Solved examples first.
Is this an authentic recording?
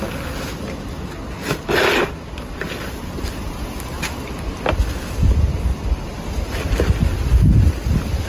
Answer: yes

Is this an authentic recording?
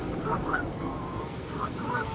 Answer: no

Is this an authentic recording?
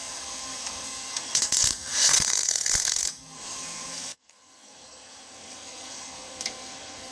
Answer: no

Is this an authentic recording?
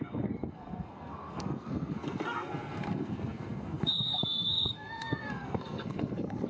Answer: no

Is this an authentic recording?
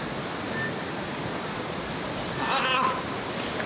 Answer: yes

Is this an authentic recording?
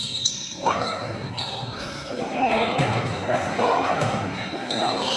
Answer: no